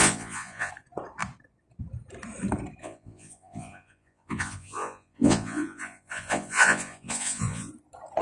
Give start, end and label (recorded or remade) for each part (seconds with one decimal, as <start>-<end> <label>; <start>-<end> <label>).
0.0-0.7 remade; 0.7-2.8 recorded; 2.8-7.7 remade; 7.7-8.2 recorded

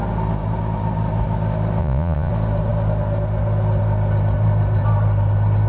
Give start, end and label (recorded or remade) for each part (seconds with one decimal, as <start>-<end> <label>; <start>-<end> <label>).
0.0-1.8 recorded; 1.8-2.3 remade; 2.3-5.7 recorded